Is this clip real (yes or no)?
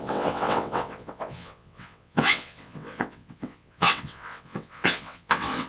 no